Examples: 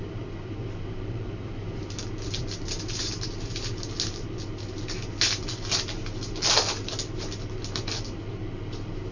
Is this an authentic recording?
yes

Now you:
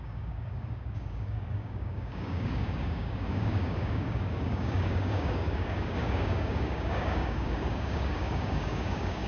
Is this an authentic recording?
no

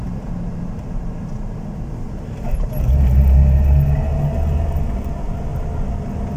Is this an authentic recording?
yes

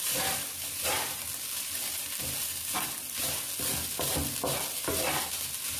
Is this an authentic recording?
yes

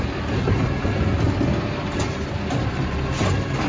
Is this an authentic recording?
yes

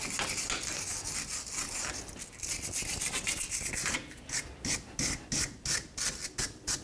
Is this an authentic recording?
yes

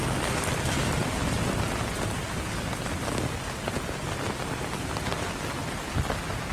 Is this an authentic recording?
yes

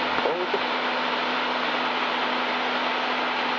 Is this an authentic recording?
yes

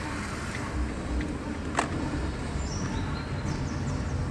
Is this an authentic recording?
yes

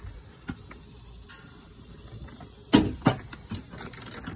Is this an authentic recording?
yes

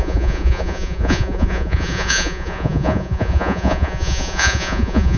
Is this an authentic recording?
no